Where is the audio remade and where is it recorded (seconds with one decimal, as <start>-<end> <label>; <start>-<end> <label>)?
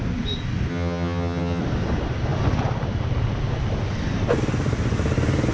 0.0-0.7 recorded; 0.7-1.6 remade; 1.6-5.5 recorded